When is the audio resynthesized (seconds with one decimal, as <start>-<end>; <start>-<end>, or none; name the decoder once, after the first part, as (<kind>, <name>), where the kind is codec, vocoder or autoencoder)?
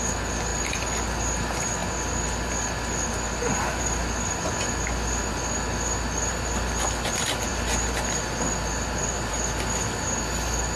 none